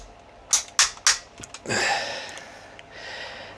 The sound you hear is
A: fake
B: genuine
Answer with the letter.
B